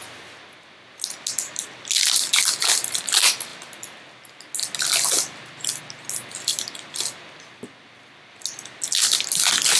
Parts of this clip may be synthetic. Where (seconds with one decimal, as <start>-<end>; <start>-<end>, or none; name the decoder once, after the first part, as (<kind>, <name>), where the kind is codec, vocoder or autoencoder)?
none